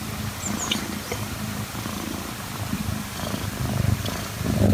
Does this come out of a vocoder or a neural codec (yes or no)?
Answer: yes